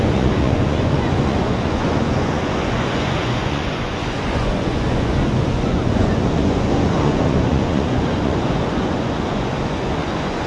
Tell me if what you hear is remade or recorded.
remade